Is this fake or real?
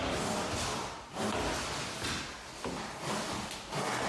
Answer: real